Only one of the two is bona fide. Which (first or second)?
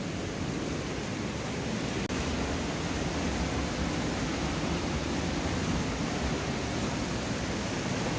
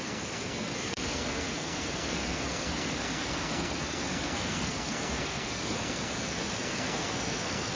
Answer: first